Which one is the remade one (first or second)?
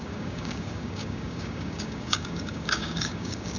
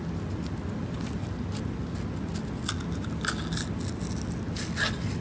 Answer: first